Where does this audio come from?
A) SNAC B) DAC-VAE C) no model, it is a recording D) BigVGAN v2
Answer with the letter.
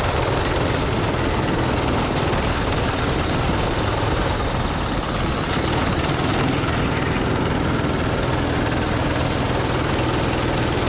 C